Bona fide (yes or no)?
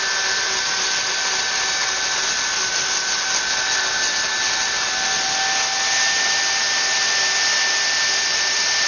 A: yes